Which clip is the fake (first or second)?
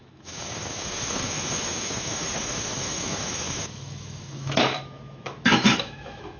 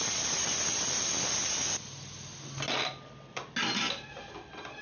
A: first